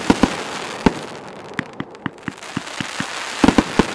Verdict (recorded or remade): recorded